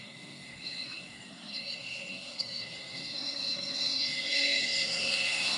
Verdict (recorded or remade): remade